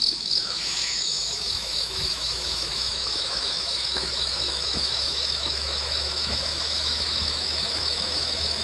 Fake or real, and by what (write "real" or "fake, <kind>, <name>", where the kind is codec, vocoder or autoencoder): fake, autoencoder, DAC-VAE